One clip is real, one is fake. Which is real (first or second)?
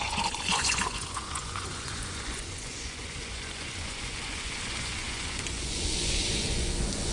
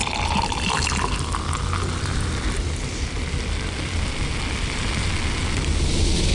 second